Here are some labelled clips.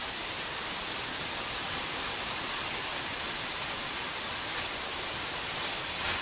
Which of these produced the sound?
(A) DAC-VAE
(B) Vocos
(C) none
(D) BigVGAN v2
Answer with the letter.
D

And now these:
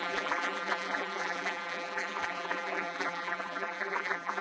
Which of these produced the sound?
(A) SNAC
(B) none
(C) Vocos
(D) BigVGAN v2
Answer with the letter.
D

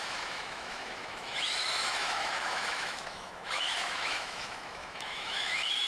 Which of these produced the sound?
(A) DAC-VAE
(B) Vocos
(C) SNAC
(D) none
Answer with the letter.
A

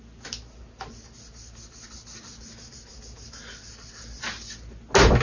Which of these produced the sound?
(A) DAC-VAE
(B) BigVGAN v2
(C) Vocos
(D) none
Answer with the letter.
D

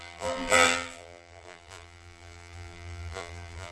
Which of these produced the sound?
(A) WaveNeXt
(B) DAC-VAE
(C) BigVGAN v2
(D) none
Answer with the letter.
C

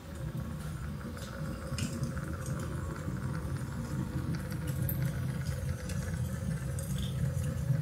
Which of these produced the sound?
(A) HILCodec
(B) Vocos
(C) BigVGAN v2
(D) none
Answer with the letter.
D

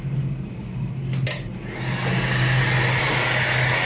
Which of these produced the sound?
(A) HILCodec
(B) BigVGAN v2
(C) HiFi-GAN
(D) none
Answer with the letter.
D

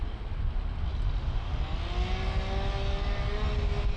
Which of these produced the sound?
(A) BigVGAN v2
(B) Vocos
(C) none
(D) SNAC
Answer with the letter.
C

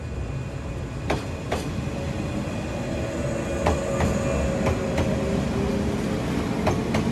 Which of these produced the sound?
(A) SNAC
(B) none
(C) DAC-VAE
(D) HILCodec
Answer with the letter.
B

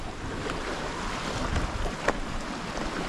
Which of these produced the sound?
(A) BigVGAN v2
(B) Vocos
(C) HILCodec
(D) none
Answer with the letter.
A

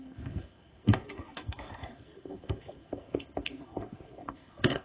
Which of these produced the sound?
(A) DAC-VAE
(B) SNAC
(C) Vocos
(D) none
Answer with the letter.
B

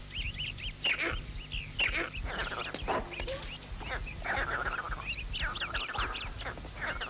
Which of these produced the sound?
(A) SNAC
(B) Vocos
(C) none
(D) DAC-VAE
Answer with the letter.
C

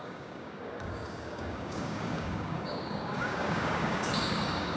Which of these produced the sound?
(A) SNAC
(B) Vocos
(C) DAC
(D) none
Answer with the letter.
C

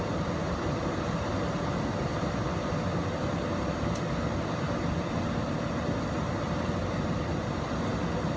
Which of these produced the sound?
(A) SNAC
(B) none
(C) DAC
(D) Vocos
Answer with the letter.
B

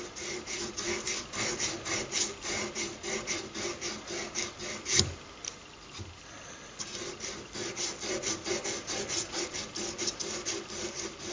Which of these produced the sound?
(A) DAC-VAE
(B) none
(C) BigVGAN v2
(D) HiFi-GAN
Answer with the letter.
B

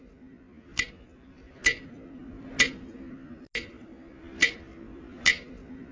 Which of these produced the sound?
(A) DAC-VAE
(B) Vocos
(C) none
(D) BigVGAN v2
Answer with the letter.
C